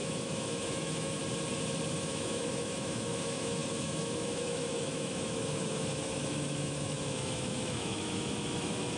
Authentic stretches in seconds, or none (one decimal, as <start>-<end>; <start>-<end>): 1.2-1.9